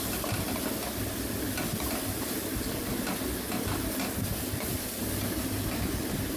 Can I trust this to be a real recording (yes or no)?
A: yes